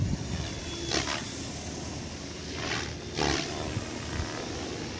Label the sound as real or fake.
real